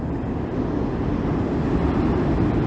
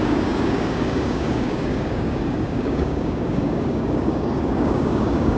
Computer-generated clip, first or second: second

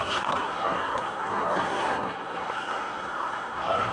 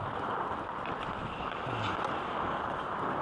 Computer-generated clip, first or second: first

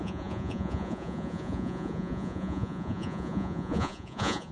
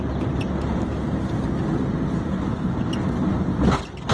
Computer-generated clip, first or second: first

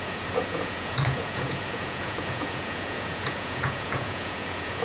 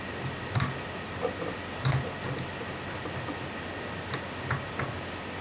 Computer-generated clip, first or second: first